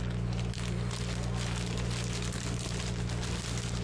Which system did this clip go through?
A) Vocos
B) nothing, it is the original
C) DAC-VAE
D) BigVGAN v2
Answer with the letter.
B